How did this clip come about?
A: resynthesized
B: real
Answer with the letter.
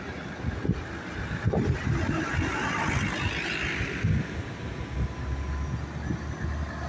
B